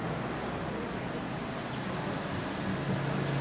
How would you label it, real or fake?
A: real